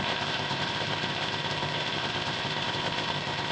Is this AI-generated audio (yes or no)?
yes